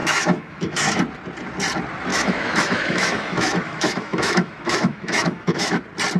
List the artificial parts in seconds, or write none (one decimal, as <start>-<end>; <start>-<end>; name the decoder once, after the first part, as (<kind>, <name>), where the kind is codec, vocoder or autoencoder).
0.0-1.0 (autoencoder, DAC-VAE); 2.1-5.8